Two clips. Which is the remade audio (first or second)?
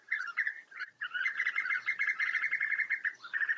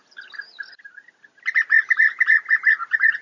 first